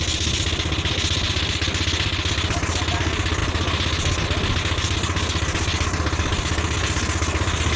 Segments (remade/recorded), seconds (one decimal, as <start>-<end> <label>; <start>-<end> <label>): 0.0-7.8 recorded